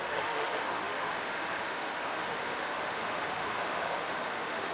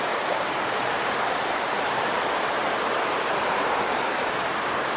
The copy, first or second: first